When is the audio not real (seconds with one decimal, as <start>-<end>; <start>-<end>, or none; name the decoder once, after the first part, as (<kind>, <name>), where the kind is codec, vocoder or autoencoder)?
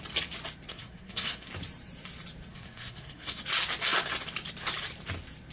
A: 0.7-1.5 (codec, SNAC); 2.5-3.4